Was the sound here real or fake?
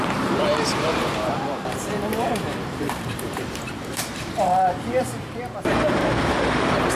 fake